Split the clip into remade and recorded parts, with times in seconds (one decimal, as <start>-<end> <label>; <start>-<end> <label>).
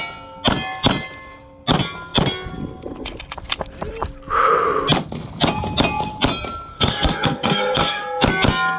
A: 0.0-6.7 recorded; 6.7-8.0 remade; 8.0-8.8 recorded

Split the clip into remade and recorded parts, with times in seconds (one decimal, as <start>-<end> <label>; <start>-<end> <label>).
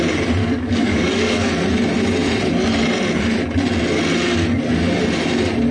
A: 0.0-0.4 recorded; 0.4-1.5 remade; 1.5-5.7 recorded